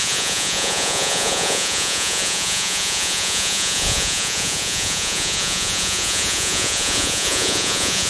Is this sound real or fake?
fake